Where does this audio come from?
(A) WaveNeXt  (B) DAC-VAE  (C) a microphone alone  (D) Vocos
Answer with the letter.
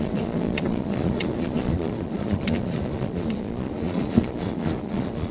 D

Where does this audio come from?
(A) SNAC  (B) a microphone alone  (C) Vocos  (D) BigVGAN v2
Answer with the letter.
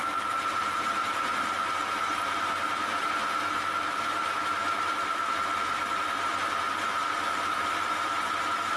D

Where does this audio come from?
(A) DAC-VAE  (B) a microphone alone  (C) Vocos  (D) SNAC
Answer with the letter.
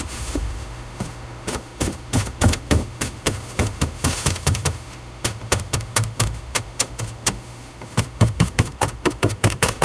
A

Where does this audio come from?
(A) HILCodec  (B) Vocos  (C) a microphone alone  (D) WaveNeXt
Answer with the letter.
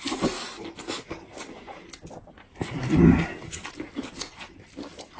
C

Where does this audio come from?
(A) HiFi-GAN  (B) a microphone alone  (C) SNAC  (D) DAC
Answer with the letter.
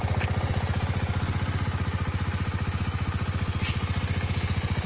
B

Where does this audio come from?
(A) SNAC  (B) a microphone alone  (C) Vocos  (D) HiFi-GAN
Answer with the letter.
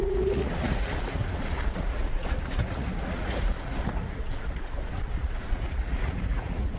C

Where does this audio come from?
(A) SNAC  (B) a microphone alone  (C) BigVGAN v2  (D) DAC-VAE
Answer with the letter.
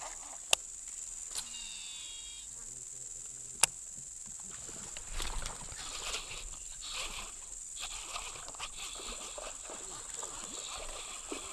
B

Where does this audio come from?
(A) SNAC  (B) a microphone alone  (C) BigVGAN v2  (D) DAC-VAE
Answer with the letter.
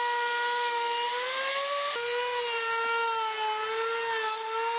B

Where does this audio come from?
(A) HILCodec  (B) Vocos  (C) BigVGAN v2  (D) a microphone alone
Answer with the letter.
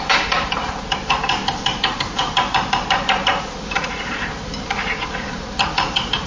C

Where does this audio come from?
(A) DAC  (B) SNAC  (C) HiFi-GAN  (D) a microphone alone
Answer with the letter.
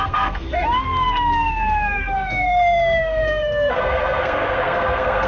B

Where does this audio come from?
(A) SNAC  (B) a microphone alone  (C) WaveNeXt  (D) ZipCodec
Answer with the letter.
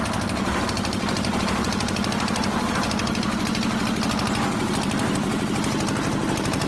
B